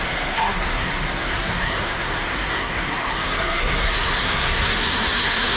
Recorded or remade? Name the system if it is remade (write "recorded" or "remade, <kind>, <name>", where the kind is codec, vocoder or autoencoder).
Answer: remade, codec, SNAC